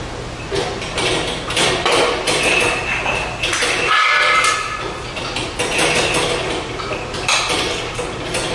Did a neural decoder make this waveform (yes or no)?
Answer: no